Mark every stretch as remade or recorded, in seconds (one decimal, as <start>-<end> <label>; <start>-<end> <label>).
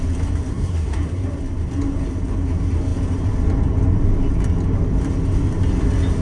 0.0-0.5 recorded; 0.5-1.3 remade; 1.3-6.2 recorded